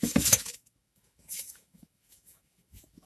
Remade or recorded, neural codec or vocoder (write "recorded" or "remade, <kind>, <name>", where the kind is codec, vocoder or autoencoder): remade, autoencoder, DAC-VAE